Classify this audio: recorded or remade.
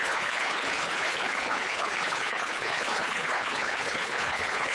remade